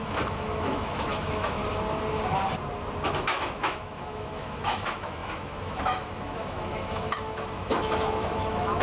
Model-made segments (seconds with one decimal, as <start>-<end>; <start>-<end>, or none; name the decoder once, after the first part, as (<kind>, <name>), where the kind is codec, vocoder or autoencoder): 0.0-1.6 (autoencoder, DAC-VAE); 3.1-8.8